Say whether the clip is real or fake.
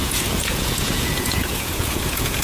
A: fake